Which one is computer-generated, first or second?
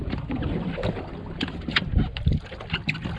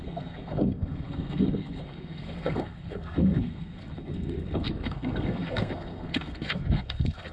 second